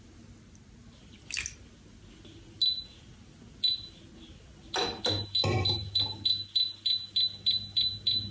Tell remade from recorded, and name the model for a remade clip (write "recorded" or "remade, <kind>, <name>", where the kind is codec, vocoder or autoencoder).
recorded